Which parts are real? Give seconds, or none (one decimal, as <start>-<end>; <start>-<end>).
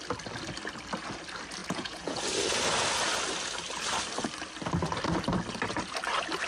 0.0-1.6; 2.2-6.5